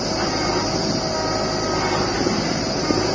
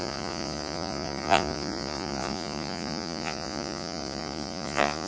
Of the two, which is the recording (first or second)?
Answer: first